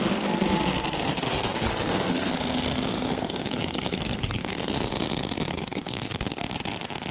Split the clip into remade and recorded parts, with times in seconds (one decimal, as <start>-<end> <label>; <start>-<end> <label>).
0.0-1.5 recorded; 1.5-2.3 remade; 2.3-3.1 recorded; 3.1-4.7 remade; 4.7-5.5 recorded; 5.5-6.4 remade; 6.4-7.1 recorded